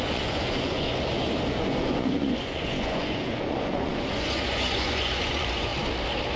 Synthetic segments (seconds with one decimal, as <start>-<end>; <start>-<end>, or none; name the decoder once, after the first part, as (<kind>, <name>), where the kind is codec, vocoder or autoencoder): 0.0-0.9 (vocoder, Vocos); 1.5-5.7